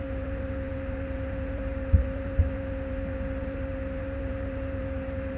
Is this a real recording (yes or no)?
no